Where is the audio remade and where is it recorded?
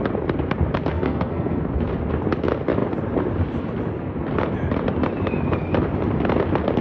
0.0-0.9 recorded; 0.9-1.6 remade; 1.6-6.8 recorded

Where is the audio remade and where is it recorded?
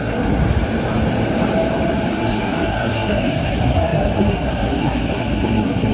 0.0-0.4 remade; 0.4-2.1 recorded; 2.1-5.9 remade